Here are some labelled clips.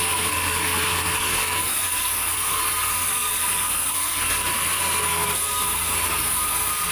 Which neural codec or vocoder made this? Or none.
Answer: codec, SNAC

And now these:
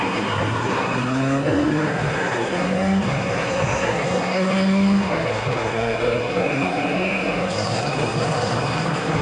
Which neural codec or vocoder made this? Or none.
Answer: codec, SNAC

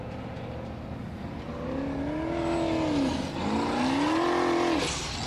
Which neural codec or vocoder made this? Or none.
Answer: none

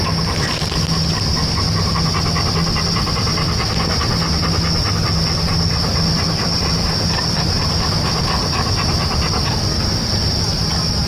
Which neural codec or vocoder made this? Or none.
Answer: none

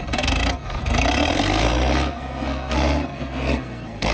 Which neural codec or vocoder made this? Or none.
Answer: codec, SNAC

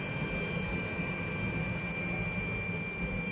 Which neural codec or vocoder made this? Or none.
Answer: none